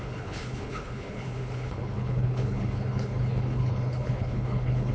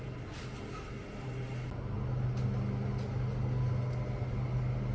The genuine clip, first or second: second